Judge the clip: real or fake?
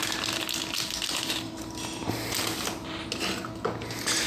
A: real